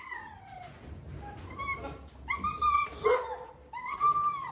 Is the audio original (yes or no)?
yes